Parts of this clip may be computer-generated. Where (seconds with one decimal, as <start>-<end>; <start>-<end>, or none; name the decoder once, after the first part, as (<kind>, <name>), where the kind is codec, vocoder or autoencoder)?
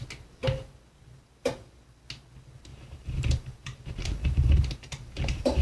2.7-5.6 (vocoder, BigVGAN v2)